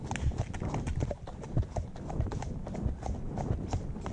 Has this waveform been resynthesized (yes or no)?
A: no